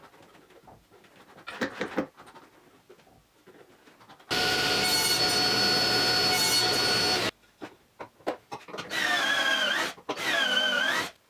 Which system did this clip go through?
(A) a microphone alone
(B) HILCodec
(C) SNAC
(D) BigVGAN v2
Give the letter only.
A